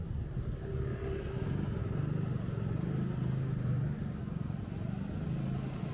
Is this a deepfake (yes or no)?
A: no